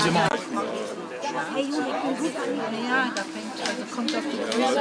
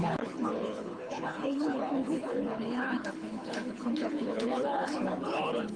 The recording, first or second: first